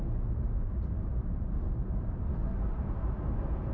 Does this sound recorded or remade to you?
recorded